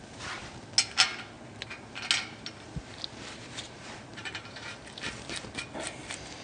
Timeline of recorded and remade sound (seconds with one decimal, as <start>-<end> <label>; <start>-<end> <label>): 0.0-4.1 recorded; 4.1-4.7 remade; 4.7-6.4 recorded